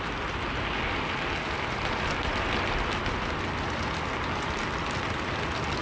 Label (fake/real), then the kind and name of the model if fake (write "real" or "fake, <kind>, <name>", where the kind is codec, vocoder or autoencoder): real